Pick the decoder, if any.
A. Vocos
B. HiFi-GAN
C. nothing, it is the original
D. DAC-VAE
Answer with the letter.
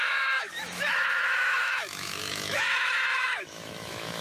D